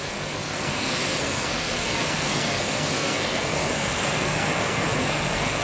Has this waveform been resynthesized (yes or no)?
yes